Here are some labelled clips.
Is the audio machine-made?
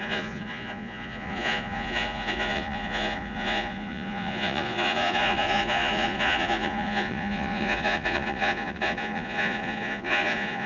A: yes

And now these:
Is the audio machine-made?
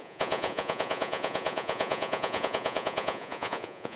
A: yes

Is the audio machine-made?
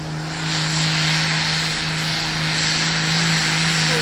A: no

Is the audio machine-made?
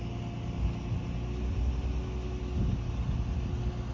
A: no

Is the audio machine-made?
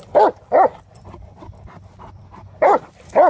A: no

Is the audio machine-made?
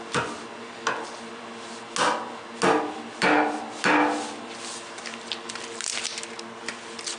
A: no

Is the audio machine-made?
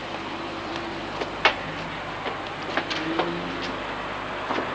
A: no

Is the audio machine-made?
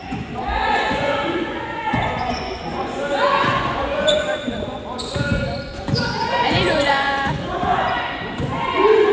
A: yes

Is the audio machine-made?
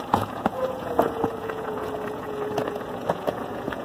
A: yes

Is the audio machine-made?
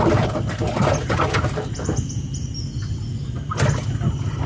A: no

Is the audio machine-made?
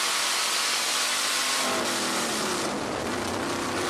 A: no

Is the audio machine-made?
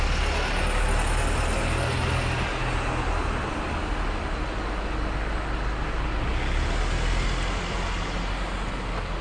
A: no